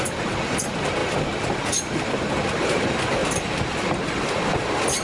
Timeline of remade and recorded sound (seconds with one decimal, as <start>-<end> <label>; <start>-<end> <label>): 0.0-5.0 remade